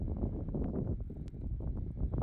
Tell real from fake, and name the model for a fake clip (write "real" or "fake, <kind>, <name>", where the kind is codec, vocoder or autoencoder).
real